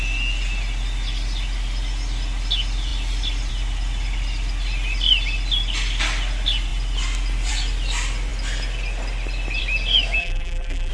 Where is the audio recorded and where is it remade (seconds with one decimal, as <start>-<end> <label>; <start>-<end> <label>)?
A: 0.0-10.2 recorded; 10.2-10.9 remade